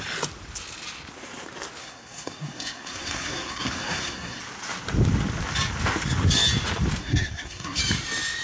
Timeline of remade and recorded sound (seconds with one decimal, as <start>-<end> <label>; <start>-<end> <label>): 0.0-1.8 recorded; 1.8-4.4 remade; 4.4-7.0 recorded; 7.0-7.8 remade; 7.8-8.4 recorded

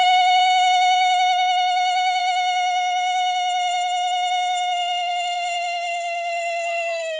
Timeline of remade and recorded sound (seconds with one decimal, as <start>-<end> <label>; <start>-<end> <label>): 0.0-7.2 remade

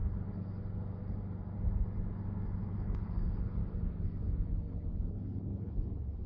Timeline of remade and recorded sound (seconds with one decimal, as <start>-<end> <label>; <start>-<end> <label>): 0.0-2.6 recorded; 2.6-3.6 remade; 3.6-5.1 recorded; 5.1-6.3 remade

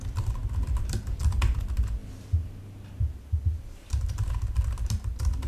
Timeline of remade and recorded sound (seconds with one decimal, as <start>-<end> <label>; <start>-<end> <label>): 0.0-2.0 remade; 2.0-2.6 recorded; 2.6-5.5 remade

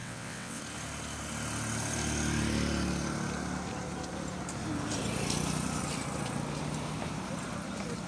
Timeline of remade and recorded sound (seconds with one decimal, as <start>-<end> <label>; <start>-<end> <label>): 0.0-0.6 remade; 0.6-8.1 recorded

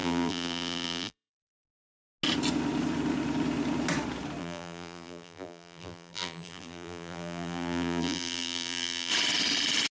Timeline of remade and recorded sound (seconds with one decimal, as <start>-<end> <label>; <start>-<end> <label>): 0.0-1.3 remade; 1.3-4.4 recorded; 4.4-9.1 remade; 9.1-9.9 recorded

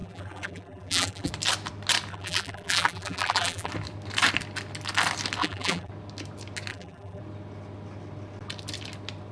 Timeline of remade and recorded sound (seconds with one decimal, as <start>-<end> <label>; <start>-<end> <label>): 0.0-1.3 remade; 1.3-2.1 recorded; 2.1-3.7 remade; 3.7-5.4 recorded; 5.4-5.9 remade; 5.9-6.7 recorded; 6.7-7.2 remade; 7.2-9.3 recorded

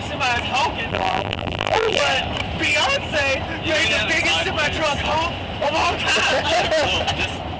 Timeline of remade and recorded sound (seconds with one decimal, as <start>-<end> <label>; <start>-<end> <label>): 0.0-0.9 recorded; 0.9-2.0 remade; 2.0-7.6 recorded